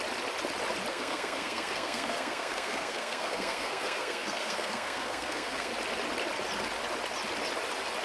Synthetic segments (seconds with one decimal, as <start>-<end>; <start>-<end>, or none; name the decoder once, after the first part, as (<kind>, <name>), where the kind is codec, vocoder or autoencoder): 0.9-5.7 (codec, SNAC)